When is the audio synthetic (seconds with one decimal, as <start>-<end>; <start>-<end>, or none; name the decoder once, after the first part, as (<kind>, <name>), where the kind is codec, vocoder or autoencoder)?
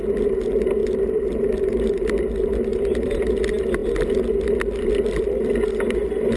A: 0.8-2.1 (vocoder, BigVGAN v2); 2.7-3.3